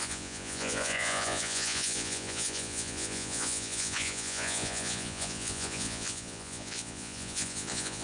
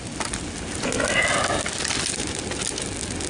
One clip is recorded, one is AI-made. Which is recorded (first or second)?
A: second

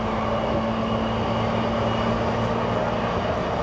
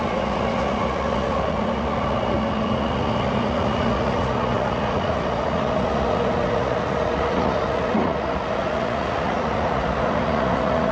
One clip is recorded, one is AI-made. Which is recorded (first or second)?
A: first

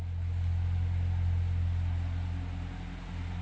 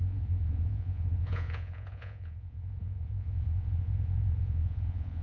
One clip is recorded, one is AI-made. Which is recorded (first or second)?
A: first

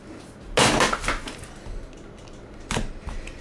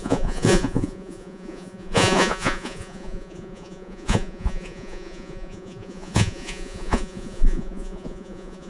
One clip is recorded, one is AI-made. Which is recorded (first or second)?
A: first